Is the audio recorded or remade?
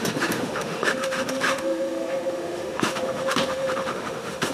remade